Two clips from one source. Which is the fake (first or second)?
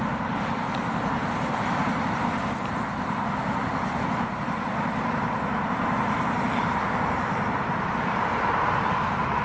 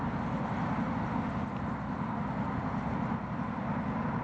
first